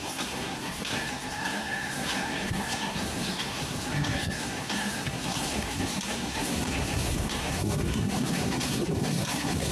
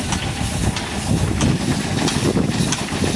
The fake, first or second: first